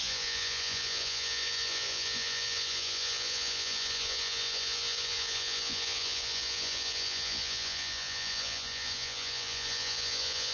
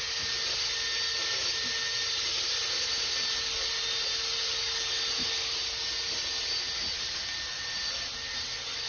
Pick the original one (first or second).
second